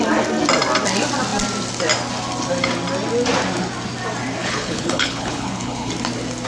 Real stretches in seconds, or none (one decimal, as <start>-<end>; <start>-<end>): 0.0-4.4; 5.9-6.5